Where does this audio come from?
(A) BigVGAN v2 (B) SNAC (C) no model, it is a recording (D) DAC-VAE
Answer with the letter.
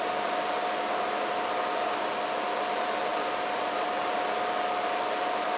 C